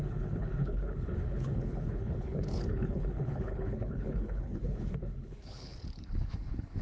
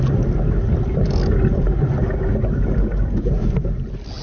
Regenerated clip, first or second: first